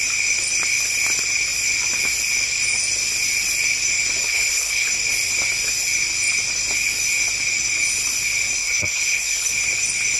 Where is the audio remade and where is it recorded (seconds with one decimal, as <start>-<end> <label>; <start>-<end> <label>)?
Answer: 0.0-4.2 recorded; 4.2-4.9 remade; 4.9-8.6 recorded; 8.6-9.5 remade; 9.5-10.2 recorded